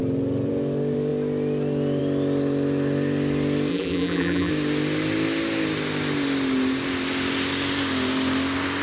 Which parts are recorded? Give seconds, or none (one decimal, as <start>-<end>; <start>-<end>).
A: 0.0-3.7; 4.5-8.8